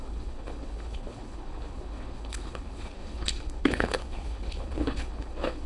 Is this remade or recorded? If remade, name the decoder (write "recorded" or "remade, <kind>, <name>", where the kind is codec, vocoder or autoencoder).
remade, codec, HILCodec